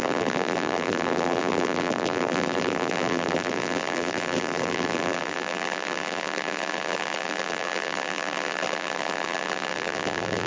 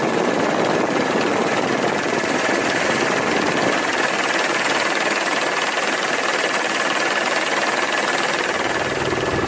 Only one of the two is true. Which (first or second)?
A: second